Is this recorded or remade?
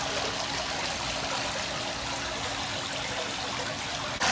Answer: recorded